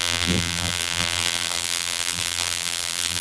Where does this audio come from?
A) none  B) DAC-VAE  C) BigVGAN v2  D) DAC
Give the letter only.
C